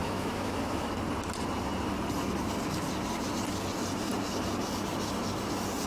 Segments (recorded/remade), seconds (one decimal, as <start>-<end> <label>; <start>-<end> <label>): 0.0-0.9 remade; 0.9-5.9 recorded